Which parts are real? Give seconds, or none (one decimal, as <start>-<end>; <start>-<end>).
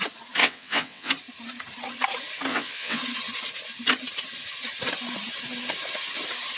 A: 0.0-0.4; 1.1-2.5; 3.0-6.6